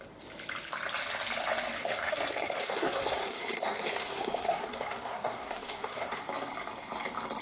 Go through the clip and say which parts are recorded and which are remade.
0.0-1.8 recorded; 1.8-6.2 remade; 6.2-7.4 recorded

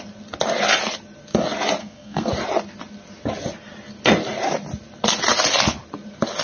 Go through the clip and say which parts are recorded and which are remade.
0.0-1.8 recorded; 1.8-2.3 remade; 2.3-6.4 recorded

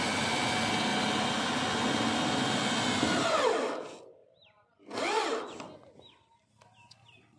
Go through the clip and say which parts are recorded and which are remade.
0.0-7.4 recorded

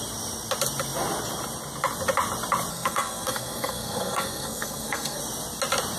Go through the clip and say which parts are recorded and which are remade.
0.0-2.7 recorded; 2.7-5.2 remade; 5.2-6.0 recorded

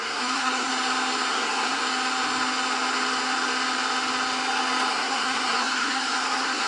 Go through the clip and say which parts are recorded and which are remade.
0.0-0.7 remade; 0.7-1.3 recorded; 1.3-1.8 remade; 1.8-4.9 recorded; 4.9-6.7 remade

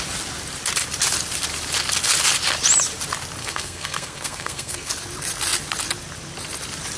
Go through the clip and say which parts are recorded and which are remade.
0.0-3.4 recorded; 3.4-4.9 remade; 4.9-7.0 recorded

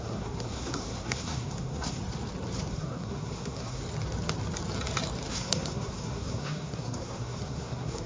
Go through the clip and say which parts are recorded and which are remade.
0.0-2.0 remade; 2.0-2.7 recorded; 2.7-3.8 remade; 3.8-5.3 recorded; 5.3-8.1 remade

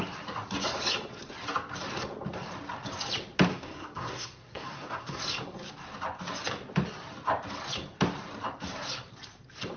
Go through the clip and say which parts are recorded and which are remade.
0.0-3.5 recorded; 3.5-5.2 remade; 5.2-9.8 recorded